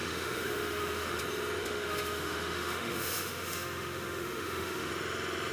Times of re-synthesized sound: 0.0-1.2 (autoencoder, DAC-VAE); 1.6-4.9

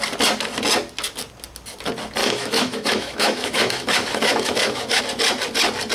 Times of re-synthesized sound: 2.2-5.0 (autoencoder, DAC-VAE)